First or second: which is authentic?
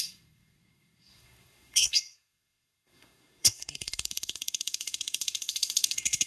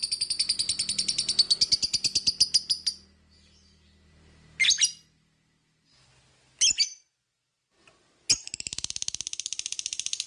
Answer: second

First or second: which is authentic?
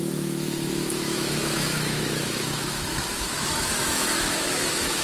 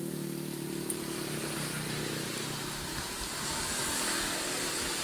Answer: second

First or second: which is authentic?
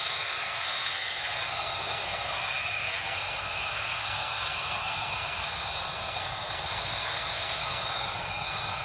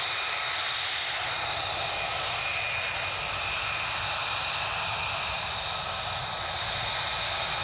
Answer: second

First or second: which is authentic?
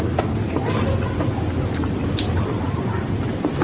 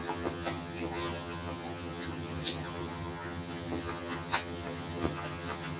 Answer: first